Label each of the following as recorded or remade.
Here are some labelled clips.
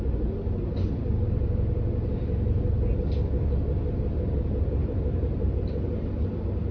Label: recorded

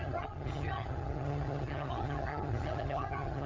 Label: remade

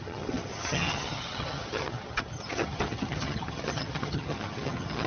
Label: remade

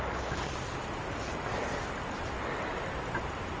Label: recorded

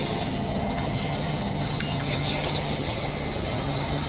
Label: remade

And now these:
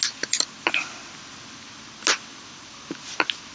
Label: recorded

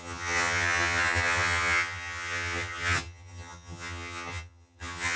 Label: remade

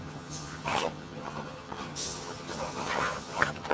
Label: remade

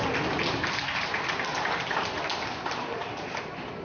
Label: recorded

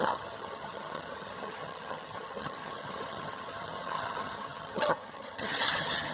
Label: remade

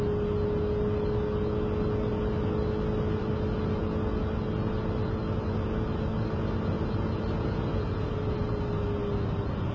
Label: recorded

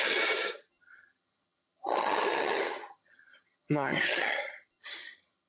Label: remade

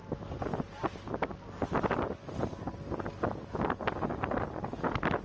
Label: recorded